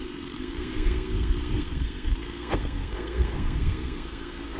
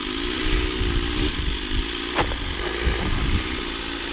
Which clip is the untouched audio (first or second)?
second